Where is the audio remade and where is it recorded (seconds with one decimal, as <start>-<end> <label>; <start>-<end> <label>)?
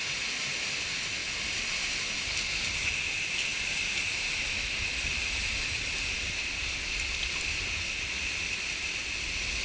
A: 0.0-9.6 recorded